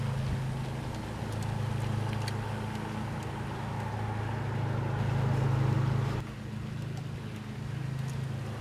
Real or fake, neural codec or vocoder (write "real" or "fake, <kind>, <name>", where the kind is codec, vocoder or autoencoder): real